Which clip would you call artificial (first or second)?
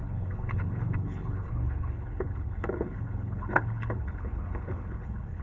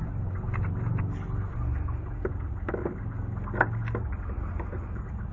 first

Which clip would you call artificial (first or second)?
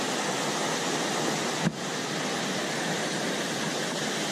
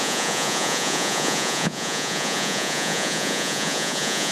second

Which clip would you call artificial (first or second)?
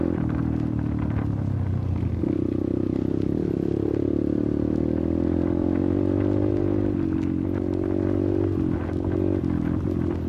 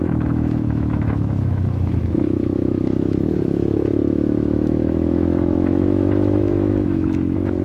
second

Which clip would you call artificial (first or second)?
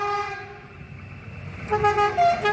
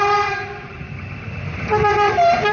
second